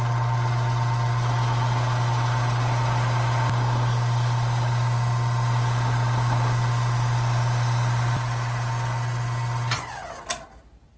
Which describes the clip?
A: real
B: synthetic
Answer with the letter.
A